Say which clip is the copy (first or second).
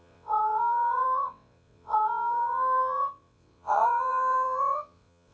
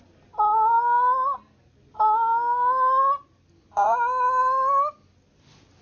first